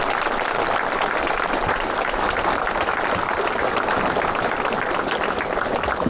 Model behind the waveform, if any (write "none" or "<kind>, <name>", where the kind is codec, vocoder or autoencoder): none